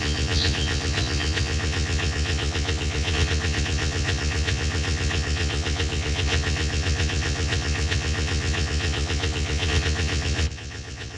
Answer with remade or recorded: remade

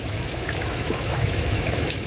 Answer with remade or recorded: remade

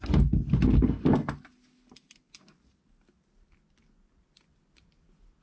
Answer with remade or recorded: recorded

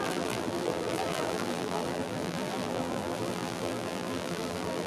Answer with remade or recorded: remade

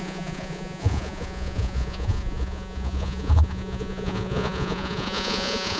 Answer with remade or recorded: remade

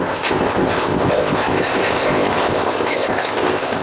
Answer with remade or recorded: remade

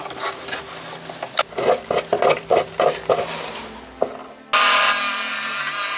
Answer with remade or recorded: recorded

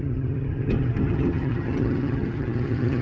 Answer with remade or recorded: remade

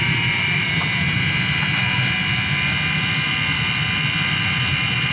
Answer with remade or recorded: recorded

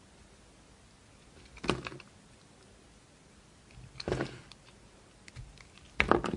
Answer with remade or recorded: recorded